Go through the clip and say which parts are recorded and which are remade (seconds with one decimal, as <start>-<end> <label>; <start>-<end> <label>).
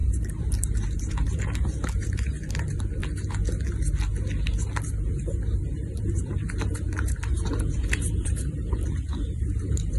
0.0-3.0 remade; 3.0-4.8 recorded; 4.8-10.0 remade